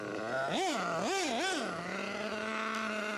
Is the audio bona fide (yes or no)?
yes